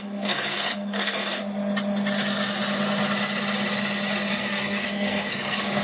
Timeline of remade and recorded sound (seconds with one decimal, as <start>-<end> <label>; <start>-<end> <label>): 0.0-1.4 remade; 1.4-4.3 recorded; 4.3-5.8 remade